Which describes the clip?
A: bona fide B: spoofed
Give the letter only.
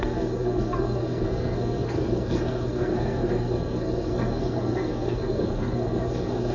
B